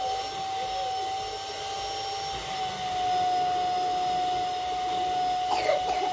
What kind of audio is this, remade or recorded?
recorded